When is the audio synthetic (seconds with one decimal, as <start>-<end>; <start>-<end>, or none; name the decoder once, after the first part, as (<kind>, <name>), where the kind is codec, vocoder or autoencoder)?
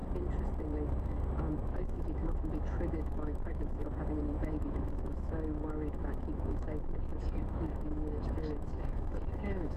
1.7-3.8 (autoencoder, DAC-VAE); 4.4-9.8